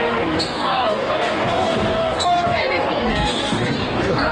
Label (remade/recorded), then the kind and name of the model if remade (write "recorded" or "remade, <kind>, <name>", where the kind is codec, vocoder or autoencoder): remade, codec, DAC